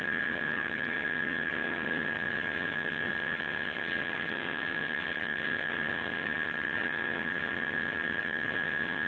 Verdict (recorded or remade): remade